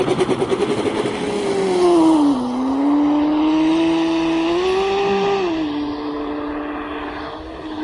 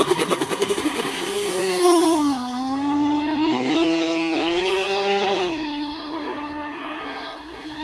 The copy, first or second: second